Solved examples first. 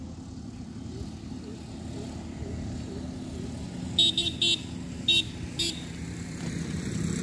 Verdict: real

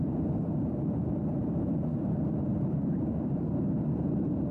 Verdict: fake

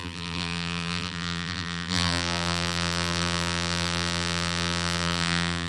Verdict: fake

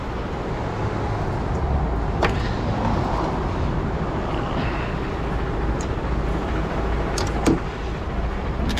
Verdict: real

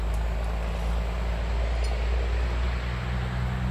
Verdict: real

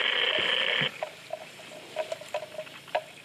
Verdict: real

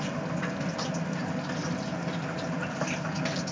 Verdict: real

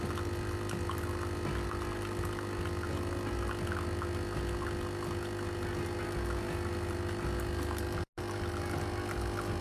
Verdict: real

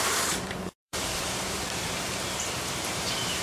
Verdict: fake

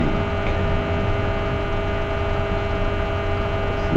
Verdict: real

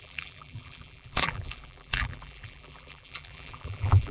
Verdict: fake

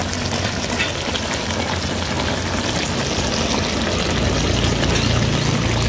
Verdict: real